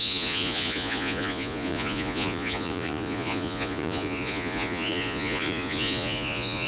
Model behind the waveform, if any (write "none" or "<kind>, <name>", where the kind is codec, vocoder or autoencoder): vocoder, Vocos